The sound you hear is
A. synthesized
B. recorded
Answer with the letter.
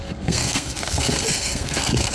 A